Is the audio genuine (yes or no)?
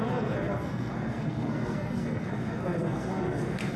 no